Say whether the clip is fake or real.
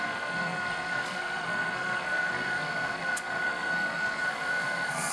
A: fake